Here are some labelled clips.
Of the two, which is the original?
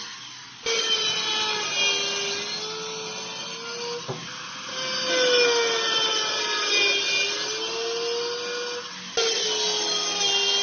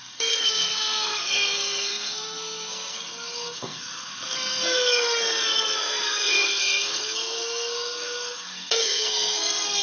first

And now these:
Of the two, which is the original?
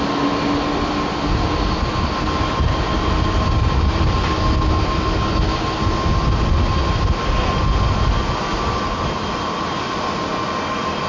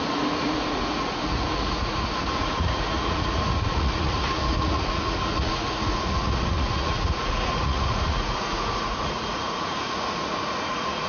first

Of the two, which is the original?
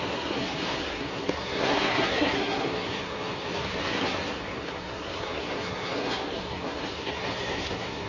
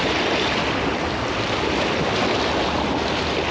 second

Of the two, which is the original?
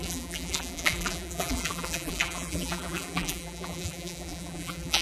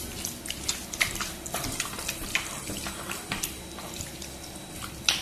second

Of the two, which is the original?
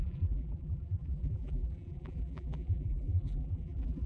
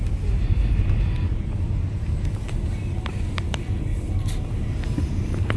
second